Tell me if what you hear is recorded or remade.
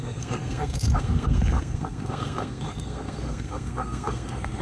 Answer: remade